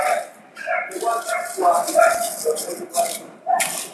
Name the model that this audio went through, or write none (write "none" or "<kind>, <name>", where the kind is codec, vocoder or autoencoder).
none